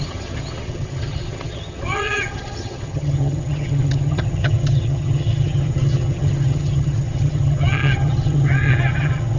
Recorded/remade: remade